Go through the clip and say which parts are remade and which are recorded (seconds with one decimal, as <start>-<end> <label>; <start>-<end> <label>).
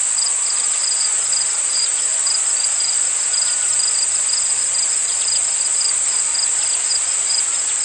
0.0-7.8 recorded